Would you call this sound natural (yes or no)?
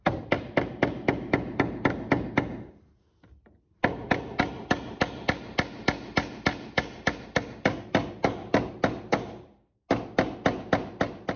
yes